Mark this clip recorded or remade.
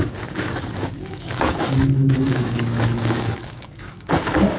remade